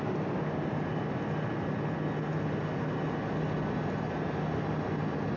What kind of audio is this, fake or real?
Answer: real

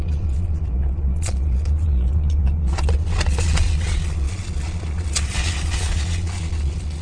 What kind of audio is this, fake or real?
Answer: fake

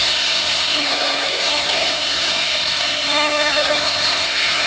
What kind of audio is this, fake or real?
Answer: fake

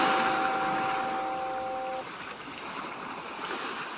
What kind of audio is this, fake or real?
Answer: real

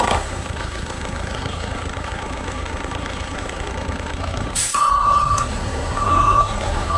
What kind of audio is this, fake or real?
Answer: fake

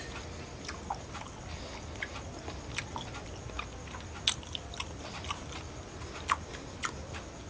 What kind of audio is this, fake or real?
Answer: real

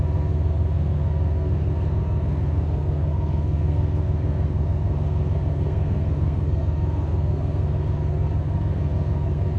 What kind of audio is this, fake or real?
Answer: fake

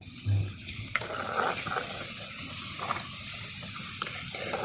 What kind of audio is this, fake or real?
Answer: real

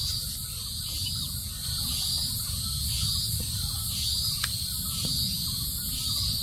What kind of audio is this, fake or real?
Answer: real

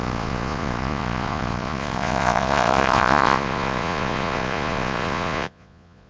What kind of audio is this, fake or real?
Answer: fake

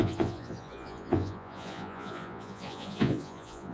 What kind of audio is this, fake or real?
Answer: fake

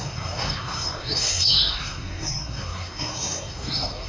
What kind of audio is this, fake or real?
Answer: fake